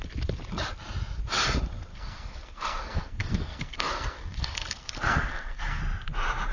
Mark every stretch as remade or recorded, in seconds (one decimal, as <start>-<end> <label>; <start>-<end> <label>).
0.0-1.9 recorded; 1.9-5.8 remade; 5.8-6.5 recorded